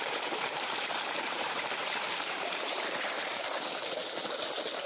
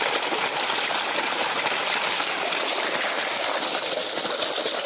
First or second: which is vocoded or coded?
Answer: first